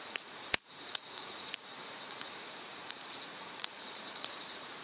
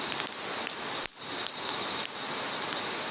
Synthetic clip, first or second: first